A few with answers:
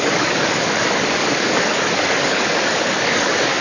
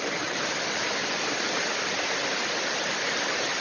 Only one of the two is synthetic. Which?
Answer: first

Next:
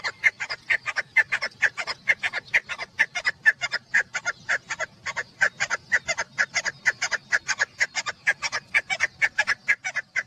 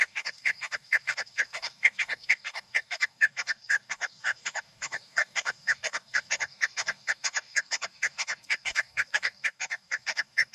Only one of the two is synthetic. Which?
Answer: second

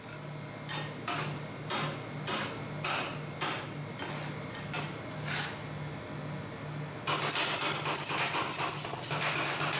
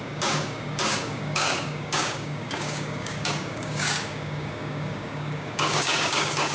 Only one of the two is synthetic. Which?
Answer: second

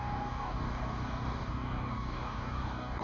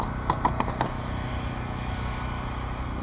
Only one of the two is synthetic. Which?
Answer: first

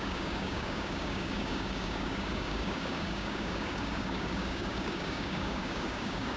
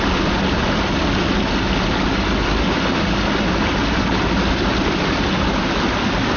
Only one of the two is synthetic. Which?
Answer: first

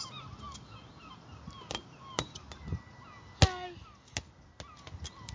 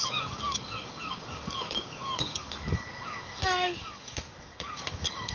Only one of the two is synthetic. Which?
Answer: second